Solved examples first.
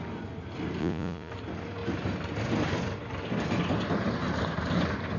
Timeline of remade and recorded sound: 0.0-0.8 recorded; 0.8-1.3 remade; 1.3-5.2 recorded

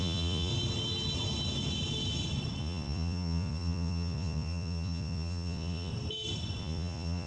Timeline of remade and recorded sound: 0.0-0.5 remade; 0.5-2.6 recorded; 2.6-5.9 remade; 5.9-6.6 recorded; 6.6-7.3 remade